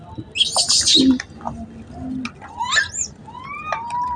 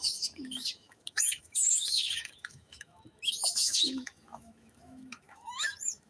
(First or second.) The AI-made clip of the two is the second